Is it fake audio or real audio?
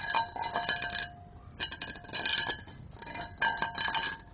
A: real